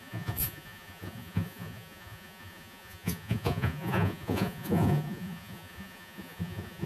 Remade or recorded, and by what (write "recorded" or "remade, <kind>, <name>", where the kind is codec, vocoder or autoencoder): remade, vocoder, Vocos